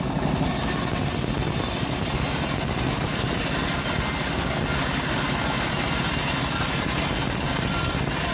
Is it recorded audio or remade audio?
recorded